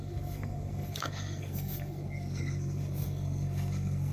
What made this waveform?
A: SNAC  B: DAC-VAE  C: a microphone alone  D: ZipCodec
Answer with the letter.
A